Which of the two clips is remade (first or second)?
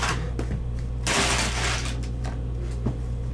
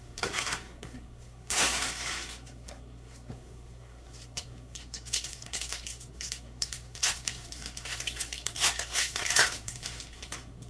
second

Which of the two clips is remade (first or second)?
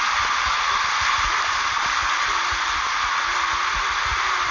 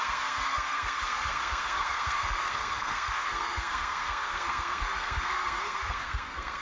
second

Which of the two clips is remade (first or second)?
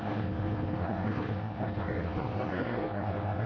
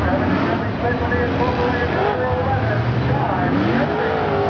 first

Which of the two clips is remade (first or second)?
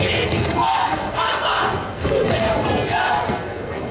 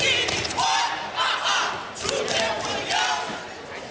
first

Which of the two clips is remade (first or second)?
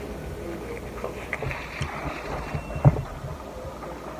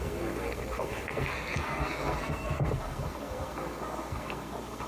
second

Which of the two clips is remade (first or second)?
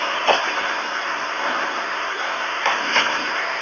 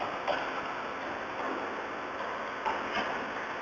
first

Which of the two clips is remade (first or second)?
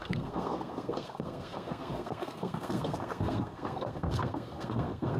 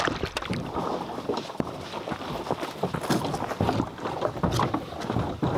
first